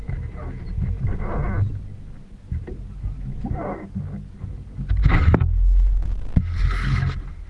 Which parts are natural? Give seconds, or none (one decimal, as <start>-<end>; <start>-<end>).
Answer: 0.0-7.5